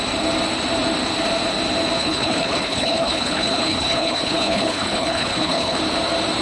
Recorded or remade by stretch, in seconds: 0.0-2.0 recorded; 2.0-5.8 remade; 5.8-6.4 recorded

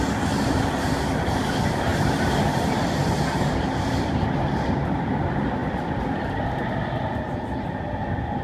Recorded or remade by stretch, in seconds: 0.0-5.6 recorded; 5.6-6.6 remade; 6.6-8.4 recorded

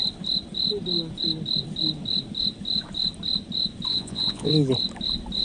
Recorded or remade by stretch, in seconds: 0.0-3.9 recorded; 3.9-4.5 remade; 4.5-5.4 recorded